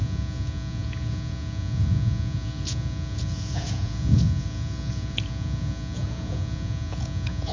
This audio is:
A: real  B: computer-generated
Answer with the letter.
B